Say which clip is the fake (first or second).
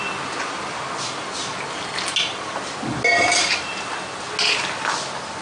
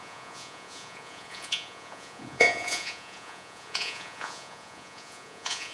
second